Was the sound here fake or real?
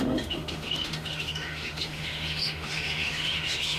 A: fake